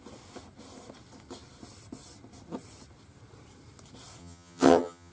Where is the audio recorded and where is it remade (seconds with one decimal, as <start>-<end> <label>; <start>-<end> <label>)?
0.0-4.2 recorded; 4.2-5.1 remade